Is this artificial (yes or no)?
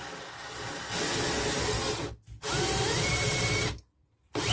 no